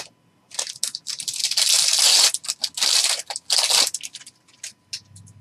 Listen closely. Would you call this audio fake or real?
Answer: real